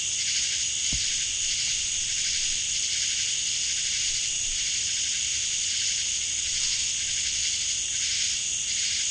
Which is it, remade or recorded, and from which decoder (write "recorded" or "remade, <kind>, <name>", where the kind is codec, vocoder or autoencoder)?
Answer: recorded